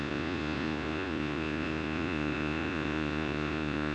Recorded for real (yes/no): no